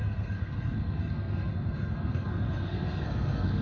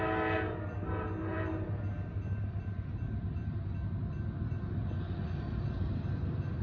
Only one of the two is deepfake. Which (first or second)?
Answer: first